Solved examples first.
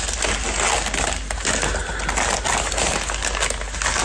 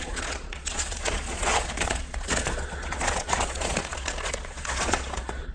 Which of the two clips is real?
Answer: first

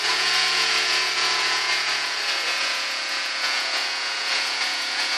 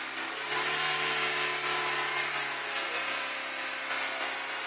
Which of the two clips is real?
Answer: second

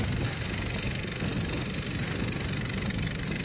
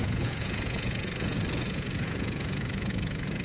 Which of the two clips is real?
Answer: first